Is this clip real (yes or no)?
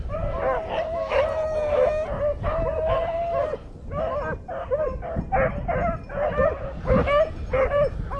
yes